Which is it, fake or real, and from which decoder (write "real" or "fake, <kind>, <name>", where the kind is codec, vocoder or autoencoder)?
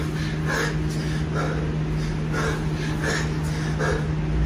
real